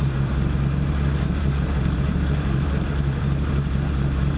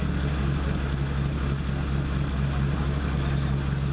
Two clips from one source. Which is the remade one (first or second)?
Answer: first